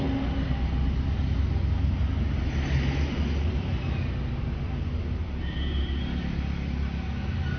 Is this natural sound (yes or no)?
yes